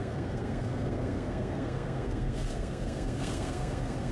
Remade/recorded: remade